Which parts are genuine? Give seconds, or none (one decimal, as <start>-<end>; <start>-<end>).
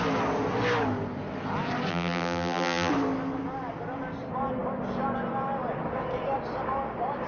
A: 0.0-1.9; 2.9-7.3